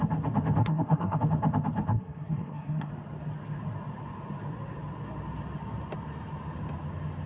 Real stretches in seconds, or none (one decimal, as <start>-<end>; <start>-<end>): 0.0-0.6; 1.2-1.9; 2.9-7.3